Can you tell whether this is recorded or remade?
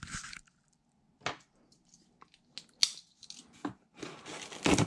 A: recorded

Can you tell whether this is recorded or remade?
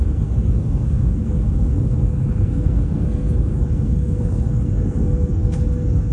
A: remade